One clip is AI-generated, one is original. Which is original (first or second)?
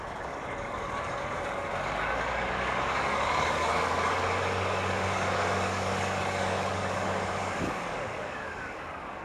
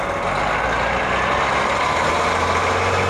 second